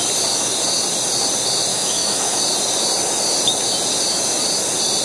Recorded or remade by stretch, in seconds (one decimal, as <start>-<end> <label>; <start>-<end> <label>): 0.0-1.7 recorded; 1.7-2.4 remade; 2.4-5.0 recorded